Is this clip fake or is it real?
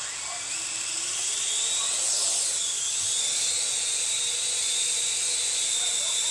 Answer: real